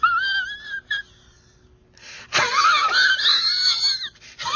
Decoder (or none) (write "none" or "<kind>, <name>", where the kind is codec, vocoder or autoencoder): none